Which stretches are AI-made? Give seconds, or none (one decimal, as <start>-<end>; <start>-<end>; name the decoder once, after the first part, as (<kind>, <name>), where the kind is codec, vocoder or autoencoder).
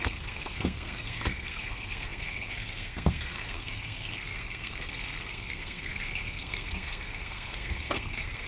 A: 0.0-8.5 (codec, SNAC)